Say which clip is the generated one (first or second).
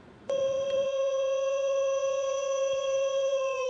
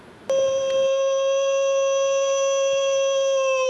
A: first